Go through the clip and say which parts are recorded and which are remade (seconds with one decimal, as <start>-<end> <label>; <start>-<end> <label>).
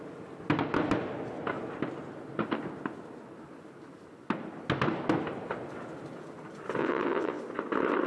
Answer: 0.0-6.8 recorded; 6.8-7.4 remade; 7.4-8.1 recorded